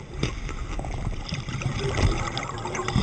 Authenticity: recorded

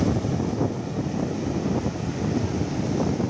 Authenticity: recorded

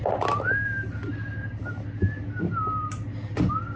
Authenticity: recorded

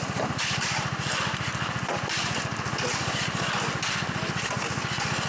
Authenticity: recorded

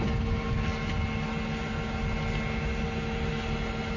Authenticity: recorded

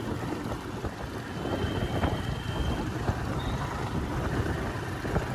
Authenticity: recorded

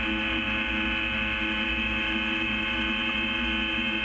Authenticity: recorded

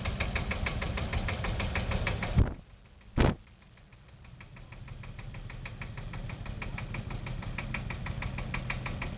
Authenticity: recorded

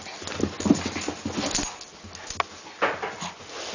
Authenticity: recorded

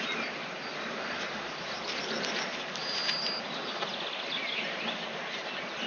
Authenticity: recorded